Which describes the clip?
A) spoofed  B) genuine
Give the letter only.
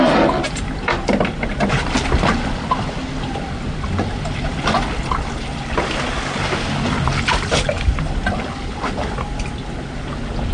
B